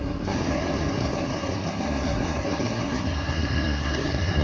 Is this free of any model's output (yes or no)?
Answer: no